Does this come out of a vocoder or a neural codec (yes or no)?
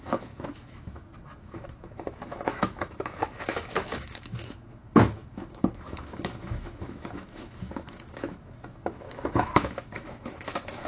yes